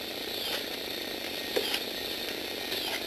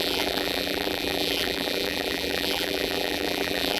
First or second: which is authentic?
first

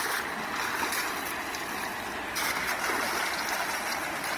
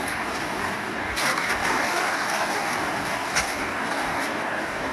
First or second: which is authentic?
first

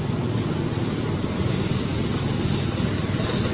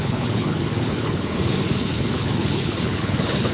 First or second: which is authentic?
first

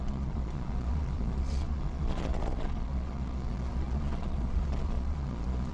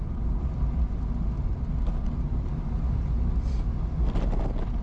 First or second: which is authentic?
second